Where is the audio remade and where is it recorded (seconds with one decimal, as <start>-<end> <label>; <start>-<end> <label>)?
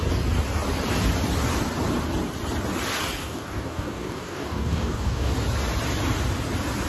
0.0-3.2 recorded; 3.2-5.3 remade; 5.3-6.9 recorded